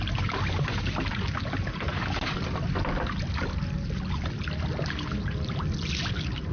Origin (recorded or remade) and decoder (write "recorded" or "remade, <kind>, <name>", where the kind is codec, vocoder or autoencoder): recorded